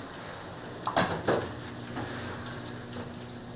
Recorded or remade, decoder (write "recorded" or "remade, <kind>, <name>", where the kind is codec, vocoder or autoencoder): recorded